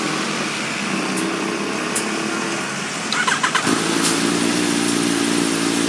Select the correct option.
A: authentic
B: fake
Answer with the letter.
A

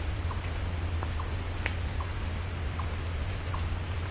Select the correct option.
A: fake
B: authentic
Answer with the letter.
B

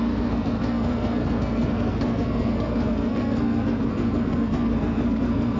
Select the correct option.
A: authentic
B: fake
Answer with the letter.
B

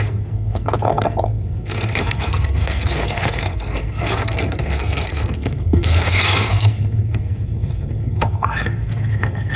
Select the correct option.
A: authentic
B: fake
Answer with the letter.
B